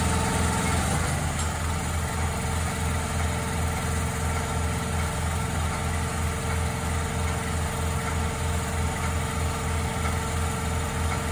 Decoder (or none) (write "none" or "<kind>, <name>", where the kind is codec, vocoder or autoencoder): none